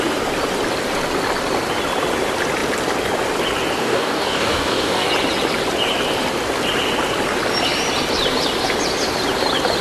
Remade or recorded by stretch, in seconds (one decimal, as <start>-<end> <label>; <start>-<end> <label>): 0.0-3.8 recorded; 3.8-5.1 remade; 5.1-9.8 recorded